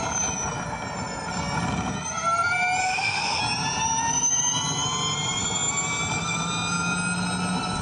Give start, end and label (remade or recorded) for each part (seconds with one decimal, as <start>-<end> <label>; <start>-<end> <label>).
0.0-2.8 recorded; 2.8-3.4 remade; 3.4-7.8 recorded